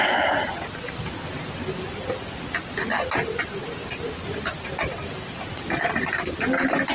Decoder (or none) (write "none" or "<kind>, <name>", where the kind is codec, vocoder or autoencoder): none